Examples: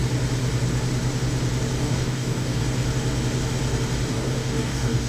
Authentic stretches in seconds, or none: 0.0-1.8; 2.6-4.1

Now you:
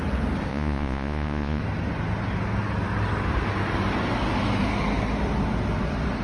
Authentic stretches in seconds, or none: 0.0-0.5; 1.6-6.2

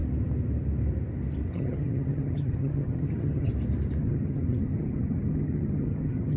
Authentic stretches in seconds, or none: 0.0-1.5; 3.5-4.0

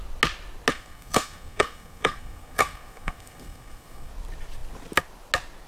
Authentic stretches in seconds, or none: 0.0-0.7; 4.1-5.7

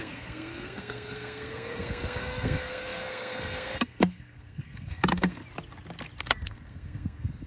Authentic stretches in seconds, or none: 5.4-6.2

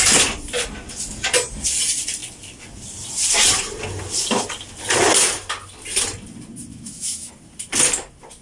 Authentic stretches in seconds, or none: 0.0-6.7; 7.3-8.4

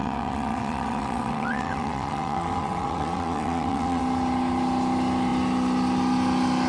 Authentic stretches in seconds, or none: 4.0-6.7